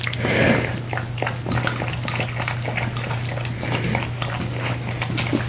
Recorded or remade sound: recorded